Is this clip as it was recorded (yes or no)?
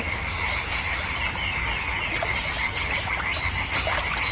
yes